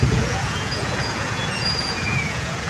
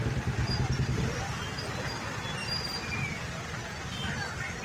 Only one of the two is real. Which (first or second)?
second